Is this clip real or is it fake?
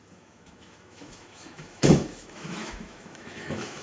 fake